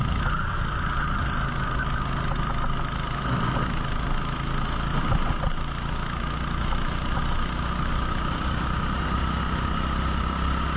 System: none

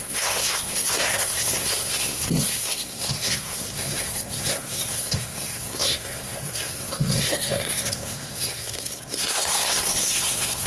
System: codec, SNAC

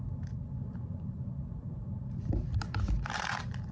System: none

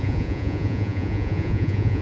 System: vocoder, Vocos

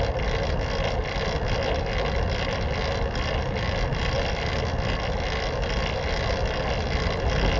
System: none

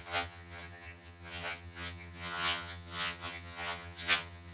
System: vocoder, HiFi-GAN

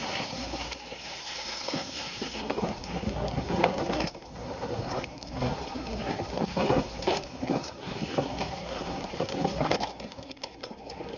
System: codec, SNAC